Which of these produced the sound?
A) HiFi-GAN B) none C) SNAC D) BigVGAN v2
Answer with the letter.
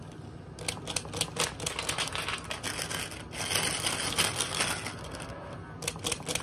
B